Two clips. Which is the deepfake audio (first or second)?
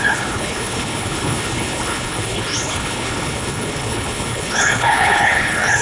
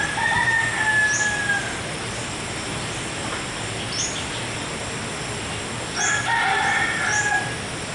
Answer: first